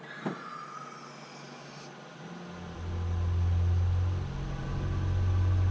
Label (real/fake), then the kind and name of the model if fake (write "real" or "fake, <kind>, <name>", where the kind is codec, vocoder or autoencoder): real